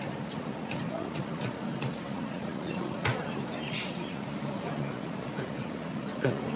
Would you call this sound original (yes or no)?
no